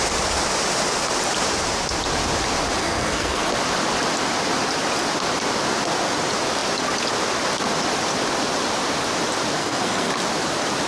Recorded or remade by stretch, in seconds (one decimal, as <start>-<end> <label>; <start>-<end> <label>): 0.0-2.8 recorded; 2.8-3.5 remade; 3.5-9.6 recorded; 9.6-10.1 remade; 10.1-10.9 recorded

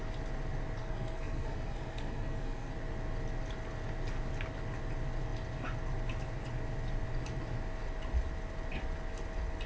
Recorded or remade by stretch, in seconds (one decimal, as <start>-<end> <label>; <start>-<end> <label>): 0.0-0.8 recorded; 0.8-2.7 remade; 2.7-9.7 recorded